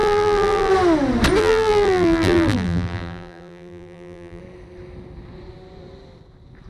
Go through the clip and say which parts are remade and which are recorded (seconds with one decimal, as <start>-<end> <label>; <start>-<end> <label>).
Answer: 0.0-0.7 remade; 0.7-1.4 recorded; 1.4-4.4 remade; 4.4-6.7 recorded